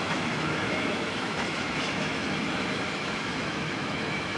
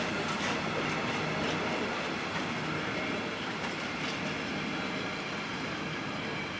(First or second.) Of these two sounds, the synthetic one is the first